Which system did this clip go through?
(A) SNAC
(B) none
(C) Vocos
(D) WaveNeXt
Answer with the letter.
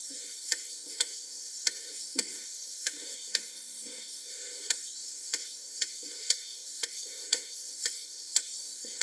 A